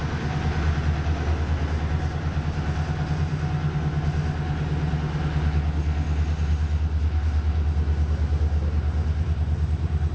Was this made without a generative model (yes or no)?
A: yes